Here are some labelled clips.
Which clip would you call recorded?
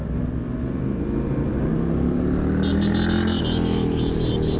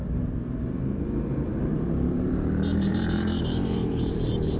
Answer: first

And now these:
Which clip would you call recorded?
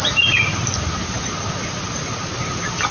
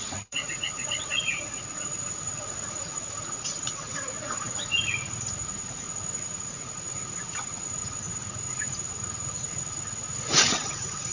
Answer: first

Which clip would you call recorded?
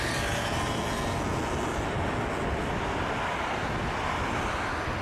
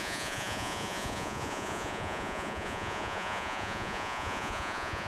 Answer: first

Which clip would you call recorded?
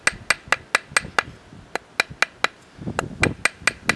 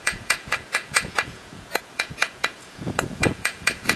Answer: first